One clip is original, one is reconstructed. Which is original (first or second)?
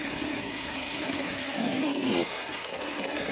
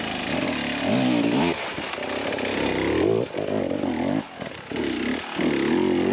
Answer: second